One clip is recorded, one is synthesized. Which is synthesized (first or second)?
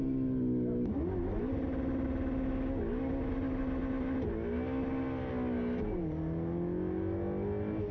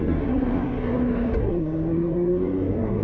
second